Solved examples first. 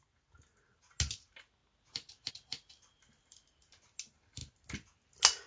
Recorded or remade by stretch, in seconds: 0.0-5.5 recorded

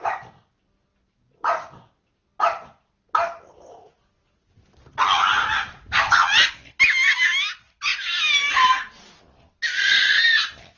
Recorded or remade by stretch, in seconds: 0.0-10.8 recorded

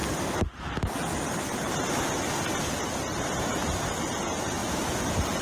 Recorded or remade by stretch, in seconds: 0.0-5.4 recorded